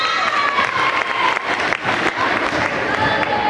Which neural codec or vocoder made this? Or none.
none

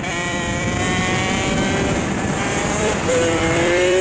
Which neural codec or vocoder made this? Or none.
vocoder, BigVGAN v2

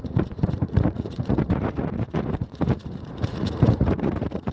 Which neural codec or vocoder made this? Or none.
vocoder, Vocos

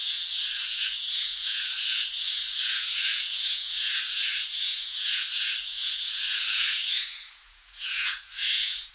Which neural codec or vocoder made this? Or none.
vocoder, Vocos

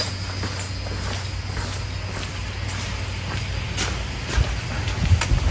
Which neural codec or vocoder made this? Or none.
none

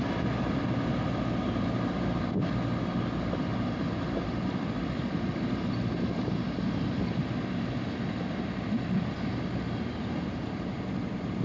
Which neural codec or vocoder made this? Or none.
vocoder, BigVGAN v2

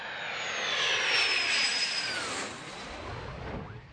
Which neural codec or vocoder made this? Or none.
none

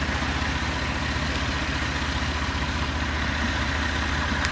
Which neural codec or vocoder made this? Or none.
none